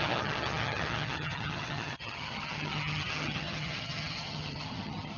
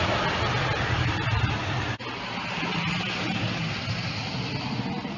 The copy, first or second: first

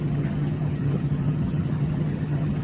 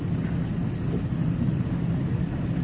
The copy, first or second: first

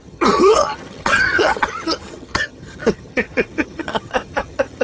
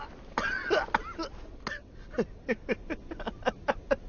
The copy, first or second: first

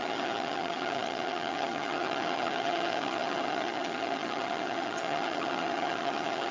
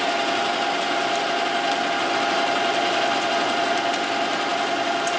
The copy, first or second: first